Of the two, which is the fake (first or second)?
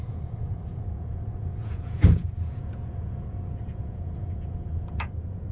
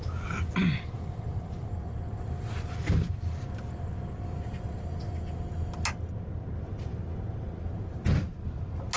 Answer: first